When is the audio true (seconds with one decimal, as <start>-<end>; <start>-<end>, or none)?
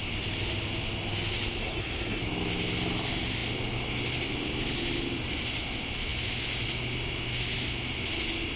0.0-1.6; 2.2-8.6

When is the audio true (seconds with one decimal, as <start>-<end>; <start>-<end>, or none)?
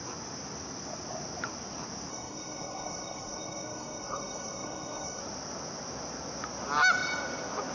0.0-2.1; 5.2-7.7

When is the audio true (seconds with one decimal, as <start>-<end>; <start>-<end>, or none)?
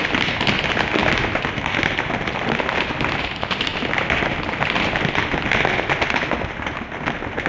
0.0-7.5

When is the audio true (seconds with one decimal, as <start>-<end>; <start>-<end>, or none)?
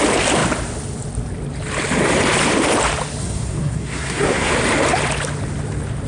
0.0-3.2; 4.5-6.1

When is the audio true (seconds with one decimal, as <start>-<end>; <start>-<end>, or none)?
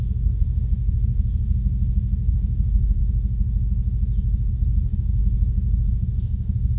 3.0-4.5; 5.2-5.9